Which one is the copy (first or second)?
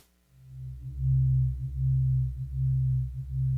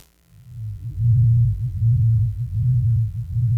second